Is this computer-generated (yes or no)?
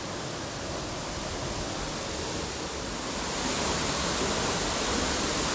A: no